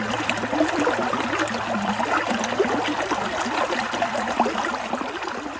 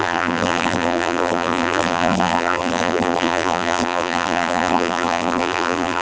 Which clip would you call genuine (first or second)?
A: first